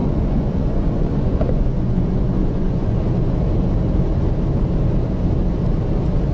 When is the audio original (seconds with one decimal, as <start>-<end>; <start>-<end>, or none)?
3.0-6.3